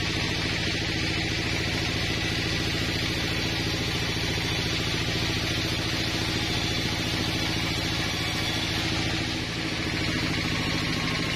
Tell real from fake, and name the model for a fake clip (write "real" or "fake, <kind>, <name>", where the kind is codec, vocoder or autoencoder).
real